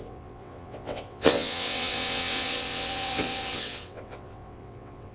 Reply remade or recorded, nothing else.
remade